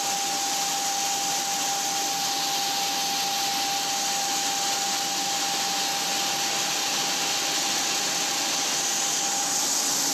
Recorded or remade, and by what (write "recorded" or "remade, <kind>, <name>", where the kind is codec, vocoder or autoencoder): recorded